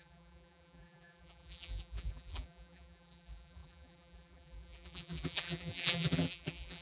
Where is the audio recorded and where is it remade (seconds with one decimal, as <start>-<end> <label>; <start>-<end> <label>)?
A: 0.0-6.8 remade